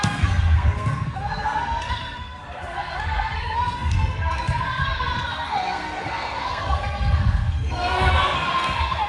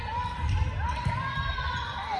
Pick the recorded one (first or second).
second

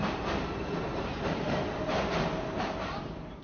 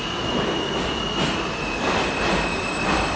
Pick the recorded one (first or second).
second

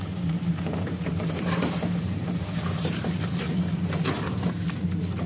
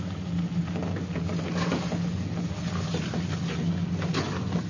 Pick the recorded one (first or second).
second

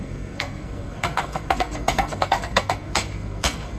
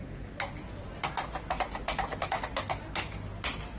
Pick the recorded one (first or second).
second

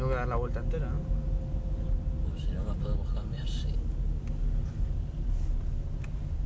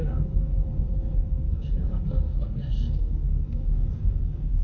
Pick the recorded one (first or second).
first